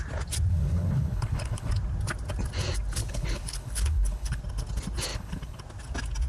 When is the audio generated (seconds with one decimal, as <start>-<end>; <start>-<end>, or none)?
0.5-1.7; 3.0-4.4; 5.1-5.6